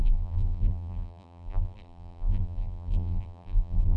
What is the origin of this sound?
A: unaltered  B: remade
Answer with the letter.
B